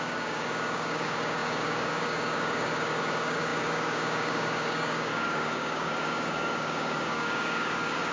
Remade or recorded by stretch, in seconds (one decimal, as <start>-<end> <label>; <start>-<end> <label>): 0.0-8.1 remade